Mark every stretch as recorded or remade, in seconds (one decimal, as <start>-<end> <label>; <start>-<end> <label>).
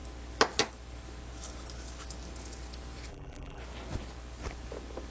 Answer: 0.0-3.1 recorded; 3.1-3.6 remade; 3.6-5.1 recorded